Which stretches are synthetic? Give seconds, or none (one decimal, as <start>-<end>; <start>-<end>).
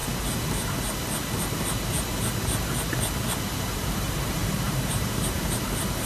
3.7-6.1